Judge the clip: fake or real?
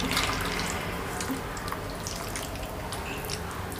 real